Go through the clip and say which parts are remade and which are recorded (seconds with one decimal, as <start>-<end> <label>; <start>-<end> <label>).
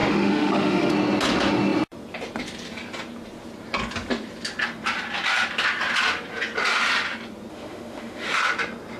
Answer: 0.0-0.9 remade; 0.9-7.5 recorded; 7.5-8.4 remade; 8.4-9.0 recorded